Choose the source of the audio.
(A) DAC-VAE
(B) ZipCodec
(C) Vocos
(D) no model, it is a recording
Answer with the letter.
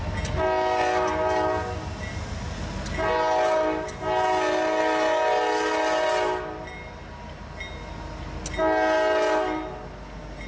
D